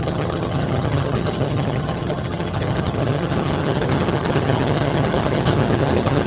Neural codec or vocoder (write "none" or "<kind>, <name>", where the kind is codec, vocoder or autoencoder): vocoder, HiFi-GAN